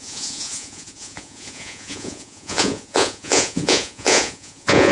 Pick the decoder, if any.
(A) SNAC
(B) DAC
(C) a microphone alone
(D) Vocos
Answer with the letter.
D